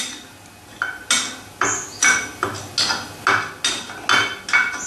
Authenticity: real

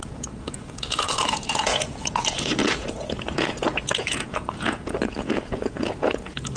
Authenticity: fake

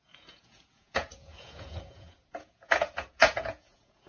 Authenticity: fake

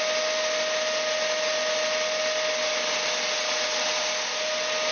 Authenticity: real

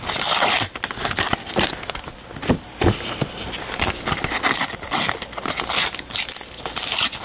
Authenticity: real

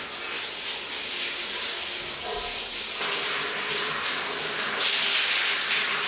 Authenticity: real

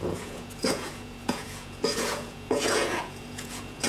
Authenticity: fake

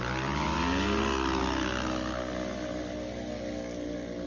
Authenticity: real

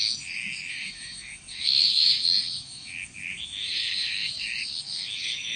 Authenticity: fake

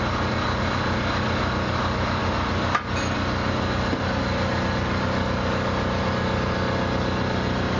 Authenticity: real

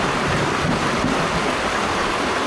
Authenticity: real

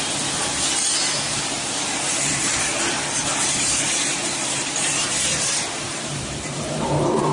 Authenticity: fake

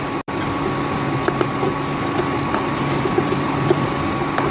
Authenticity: real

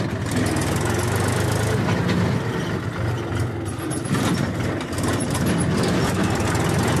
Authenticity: real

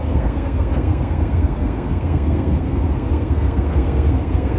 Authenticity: fake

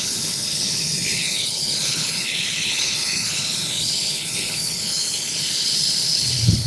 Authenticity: fake